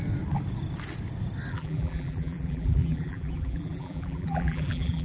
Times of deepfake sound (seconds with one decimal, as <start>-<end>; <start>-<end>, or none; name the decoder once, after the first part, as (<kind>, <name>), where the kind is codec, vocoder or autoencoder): 1.5-5.0 (vocoder, BigVGAN v2)